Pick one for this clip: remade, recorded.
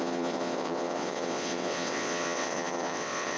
remade